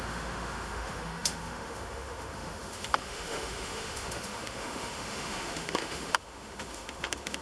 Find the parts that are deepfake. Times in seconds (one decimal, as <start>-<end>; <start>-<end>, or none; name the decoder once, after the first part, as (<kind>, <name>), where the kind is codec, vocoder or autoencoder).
0.0-7.4 (autoencoder, DAC-VAE)